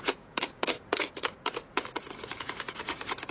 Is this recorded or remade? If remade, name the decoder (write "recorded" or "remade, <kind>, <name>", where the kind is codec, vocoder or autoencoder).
remade, vocoder, Vocos